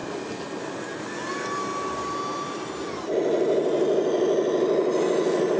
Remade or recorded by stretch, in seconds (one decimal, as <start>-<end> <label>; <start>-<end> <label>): 0.0-5.6 recorded